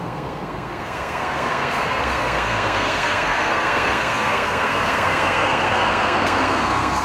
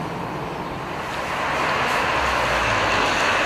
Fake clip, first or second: first